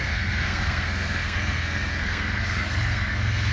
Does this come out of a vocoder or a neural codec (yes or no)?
yes